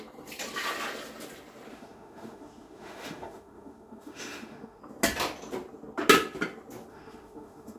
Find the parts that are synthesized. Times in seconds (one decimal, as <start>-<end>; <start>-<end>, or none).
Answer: 1.7-4.8; 6.9-7.8